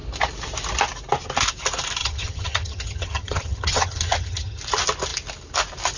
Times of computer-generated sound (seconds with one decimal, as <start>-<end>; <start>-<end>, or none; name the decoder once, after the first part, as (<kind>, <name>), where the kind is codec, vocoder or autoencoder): 2.0-4.6 (vocoder, HiFi-GAN)